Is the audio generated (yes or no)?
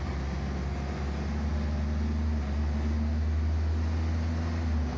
no